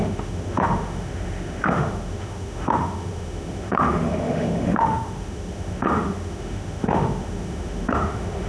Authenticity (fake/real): fake